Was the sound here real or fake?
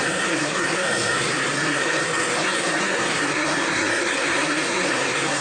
fake